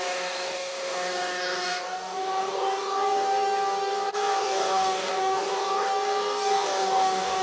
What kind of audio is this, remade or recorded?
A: remade